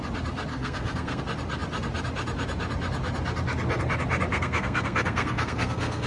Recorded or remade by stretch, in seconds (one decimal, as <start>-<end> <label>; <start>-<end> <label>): 0.0-0.5 recorded; 0.5-1.2 remade; 1.2-4.3 recorded; 4.3-6.1 remade